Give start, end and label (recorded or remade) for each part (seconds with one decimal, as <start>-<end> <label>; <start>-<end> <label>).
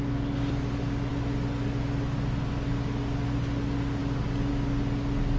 0.0-5.4 recorded